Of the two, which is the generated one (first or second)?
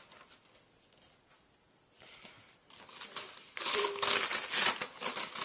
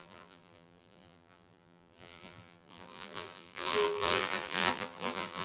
second